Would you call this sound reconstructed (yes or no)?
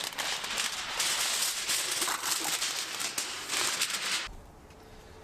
no